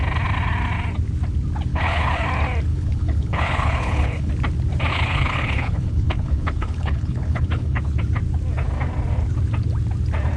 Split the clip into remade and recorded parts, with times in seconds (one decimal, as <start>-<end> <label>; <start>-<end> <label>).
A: 0.0-1.7 recorded; 1.7-2.2 remade; 2.2-2.7 recorded; 2.7-4.3 remade; 4.3-4.9 recorded; 4.9-7.8 remade; 7.8-10.4 recorded